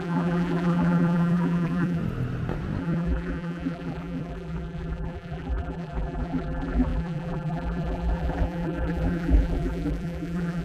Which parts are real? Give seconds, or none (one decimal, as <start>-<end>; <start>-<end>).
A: 2.0-2.8